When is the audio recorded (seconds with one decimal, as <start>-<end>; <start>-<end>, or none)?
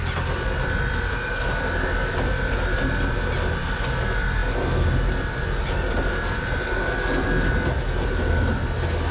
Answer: 0.0-9.1